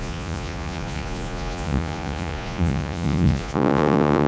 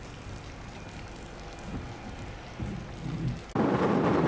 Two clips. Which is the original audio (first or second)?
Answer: second